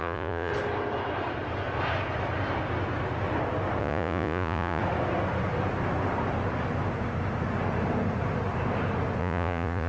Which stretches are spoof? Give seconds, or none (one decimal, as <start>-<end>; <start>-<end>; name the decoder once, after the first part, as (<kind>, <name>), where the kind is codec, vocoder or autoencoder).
0.0-0.5 (vocoder, Vocos); 3.8-4.8; 9.2-9.9